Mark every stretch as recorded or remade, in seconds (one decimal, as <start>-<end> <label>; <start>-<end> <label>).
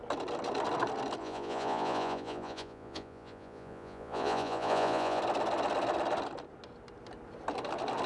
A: 0.0-1.2 recorded; 1.2-5.2 remade; 5.2-8.1 recorded